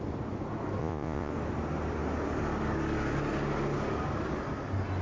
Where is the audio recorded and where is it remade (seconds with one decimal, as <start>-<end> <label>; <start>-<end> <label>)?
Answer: 0.0-0.8 recorded; 0.8-1.3 remade; 1.3-5.0 recorded